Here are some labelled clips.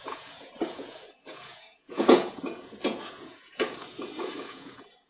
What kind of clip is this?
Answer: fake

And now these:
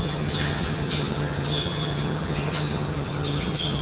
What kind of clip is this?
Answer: fake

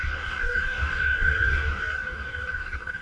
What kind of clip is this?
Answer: fake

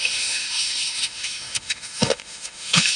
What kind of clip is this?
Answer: fake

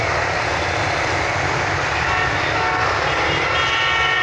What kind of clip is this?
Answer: real